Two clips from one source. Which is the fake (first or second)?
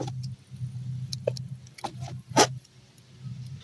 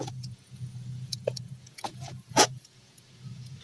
second